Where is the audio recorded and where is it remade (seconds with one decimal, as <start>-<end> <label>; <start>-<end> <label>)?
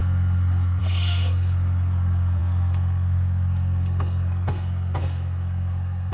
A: 0.0-6.1 remade